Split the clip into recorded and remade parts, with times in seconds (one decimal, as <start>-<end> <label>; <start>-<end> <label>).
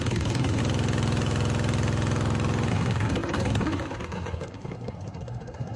0.0-0.6 remade; 0.6-2.7 recorded; 2.7-5.8 remade